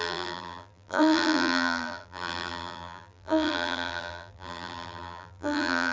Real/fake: fake